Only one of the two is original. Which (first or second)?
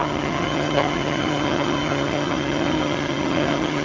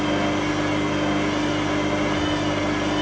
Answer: second